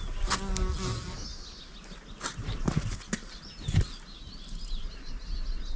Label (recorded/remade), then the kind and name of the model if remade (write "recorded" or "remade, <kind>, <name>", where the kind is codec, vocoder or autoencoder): recorded